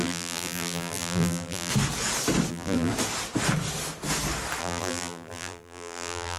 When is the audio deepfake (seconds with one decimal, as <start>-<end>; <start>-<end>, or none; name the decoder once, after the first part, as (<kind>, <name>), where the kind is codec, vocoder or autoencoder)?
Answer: 0.0-1.7 (vocoder, BigVGAN v2); 2.5-2.9; 4.6-6.4